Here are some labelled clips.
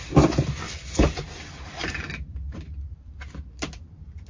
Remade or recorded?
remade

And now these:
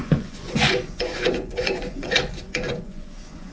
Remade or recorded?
remade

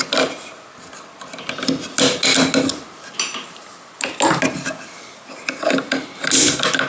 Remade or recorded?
recorded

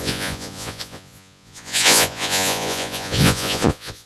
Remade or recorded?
remade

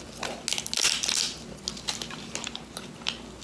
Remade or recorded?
recorded